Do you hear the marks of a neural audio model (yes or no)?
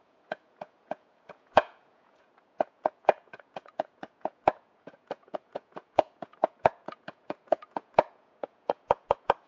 yes